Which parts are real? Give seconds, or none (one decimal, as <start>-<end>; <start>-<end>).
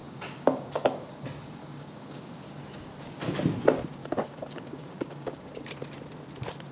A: 1.1-1.6; 2.5-4.0; 5.6-6.7